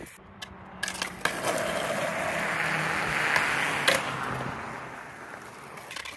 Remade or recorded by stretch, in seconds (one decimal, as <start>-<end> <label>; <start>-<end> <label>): 0.0-6.2 recorded